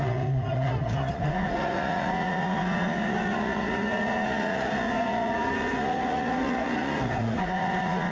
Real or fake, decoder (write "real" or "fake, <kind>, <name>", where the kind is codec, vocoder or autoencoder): fake, vocoder, Vocos